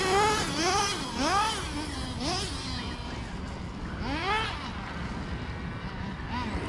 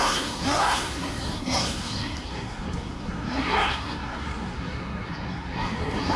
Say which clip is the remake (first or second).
second